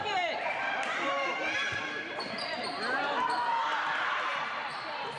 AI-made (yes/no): yes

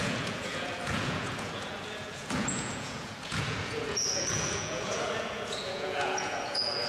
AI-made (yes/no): yes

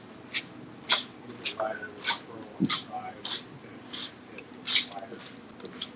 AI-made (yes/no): no